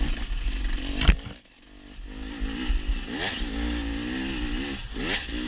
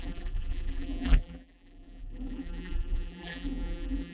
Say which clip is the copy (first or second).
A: second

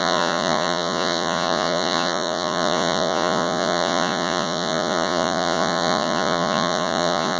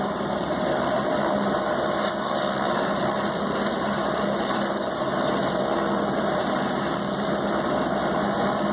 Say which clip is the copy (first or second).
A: first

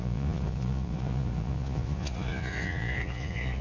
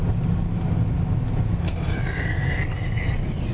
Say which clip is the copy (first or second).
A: first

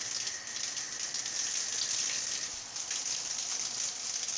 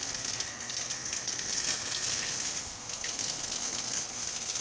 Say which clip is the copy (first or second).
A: second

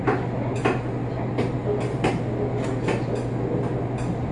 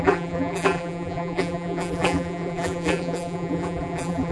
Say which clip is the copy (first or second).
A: second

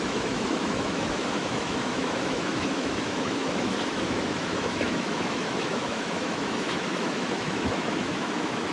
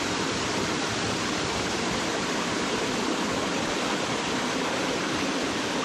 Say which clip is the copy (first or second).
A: first